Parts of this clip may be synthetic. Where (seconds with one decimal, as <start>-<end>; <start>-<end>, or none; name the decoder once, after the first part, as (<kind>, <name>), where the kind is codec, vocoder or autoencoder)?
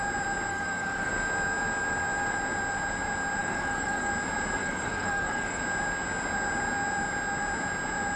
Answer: 0.5-1.1 (codec, DAC); 3.4-4.1; 4.6-5.6